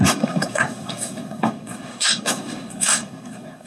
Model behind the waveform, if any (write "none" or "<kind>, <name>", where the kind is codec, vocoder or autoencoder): codec, SNAC